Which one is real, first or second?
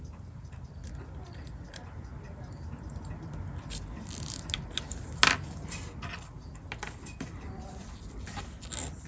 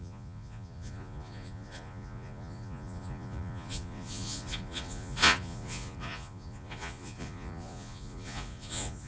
first